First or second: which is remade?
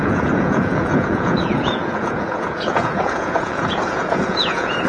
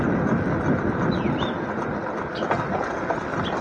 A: first